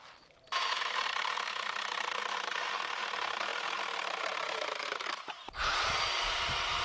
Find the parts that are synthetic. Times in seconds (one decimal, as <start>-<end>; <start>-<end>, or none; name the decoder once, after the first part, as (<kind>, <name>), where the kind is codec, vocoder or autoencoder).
0.0-3.5 (vocoder, BigVGAN v2); 4.2-6.8

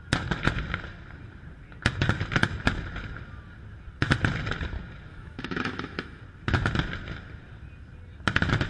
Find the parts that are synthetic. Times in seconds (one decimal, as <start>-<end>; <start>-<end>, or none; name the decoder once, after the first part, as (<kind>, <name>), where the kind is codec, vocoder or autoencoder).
5.1-6.2 (autoencoder, DAC-VAE)

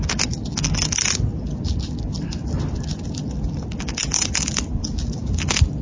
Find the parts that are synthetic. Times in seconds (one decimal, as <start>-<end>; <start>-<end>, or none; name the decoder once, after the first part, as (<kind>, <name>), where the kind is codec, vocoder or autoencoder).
1.3-4.8 (vocoder, BigVGAN v2)

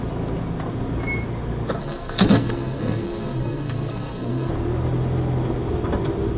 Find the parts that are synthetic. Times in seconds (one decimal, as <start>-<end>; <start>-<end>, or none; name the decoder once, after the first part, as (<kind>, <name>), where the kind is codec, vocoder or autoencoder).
1.8-4.5 (codec, SNAC)